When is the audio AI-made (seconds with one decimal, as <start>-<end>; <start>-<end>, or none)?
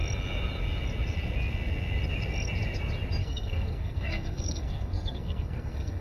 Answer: 3.2-6.0